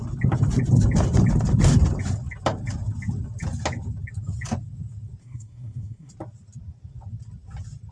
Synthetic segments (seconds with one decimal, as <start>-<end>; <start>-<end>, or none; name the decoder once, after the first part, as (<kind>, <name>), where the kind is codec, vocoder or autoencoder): 5.2-6.1 (codec, SNAC)